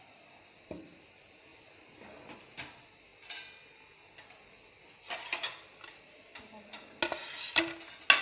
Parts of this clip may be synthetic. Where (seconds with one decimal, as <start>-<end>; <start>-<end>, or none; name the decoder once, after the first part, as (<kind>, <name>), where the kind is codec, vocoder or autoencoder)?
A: none